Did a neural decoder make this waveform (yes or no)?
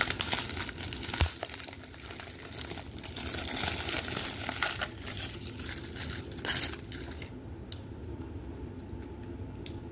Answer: yes